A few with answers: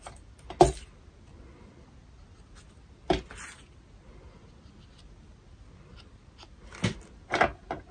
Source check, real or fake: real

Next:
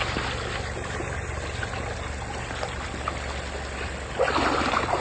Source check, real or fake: real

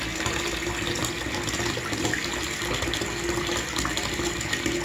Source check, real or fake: real